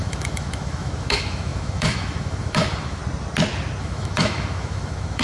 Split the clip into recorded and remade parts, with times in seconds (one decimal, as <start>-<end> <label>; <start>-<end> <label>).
0.0-3.0 remade; 3.0-3.8 recorded; 3.8-5.2 remade